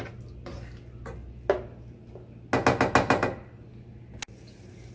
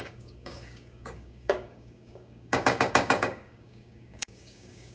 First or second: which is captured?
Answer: first